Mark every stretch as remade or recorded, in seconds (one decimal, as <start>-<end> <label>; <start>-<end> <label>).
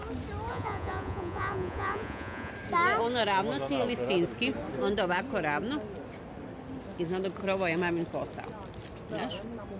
0.0-0.5 recorded; 0.5-2.5 remade; 2.5-9.8 recorded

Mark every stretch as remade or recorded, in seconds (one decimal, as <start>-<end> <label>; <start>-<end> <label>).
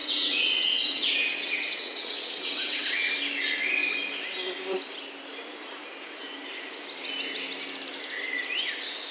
0.0-3.1 remade; 3.1-9.1 recorded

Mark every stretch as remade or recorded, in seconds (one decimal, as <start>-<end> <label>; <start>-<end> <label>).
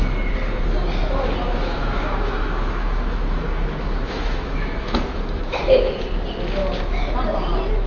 0.0-1.4 recorded; 1.4-6.0 remade; 6.0-7.9 recorded